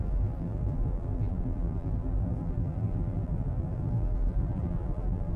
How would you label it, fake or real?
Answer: fake